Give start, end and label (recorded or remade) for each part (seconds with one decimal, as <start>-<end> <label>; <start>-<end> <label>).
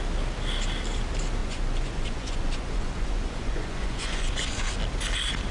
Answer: 0.0-1.4 recorded; 1.4-4.7 remade; 4.7-5.5 recorded